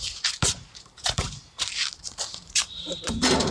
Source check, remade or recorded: remade